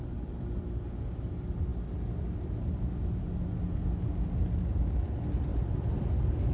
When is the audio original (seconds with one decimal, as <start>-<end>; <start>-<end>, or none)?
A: 0.0-6.5